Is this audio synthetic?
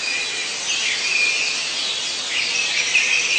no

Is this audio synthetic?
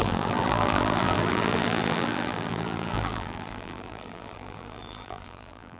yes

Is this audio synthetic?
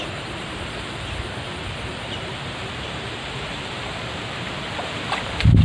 yes